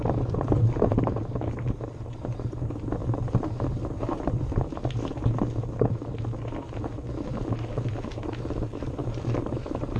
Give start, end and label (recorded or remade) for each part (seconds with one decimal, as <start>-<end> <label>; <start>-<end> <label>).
0.0-3.0 remade; 3.0-3.7 recorded; 3.7-4.7 remade; 4.7-8.3 recorded; 8.3-10.0 remade